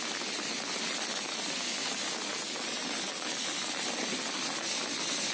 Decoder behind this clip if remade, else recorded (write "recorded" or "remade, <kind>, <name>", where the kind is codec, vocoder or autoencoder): recorded